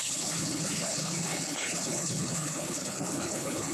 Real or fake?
fake